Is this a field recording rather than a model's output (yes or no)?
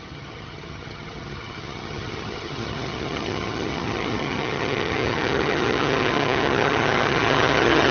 no